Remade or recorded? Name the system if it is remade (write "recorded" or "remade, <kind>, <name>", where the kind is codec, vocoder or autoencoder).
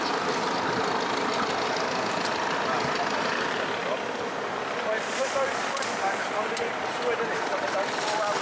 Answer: recorded